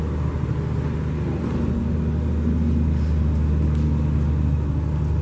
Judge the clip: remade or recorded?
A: recorded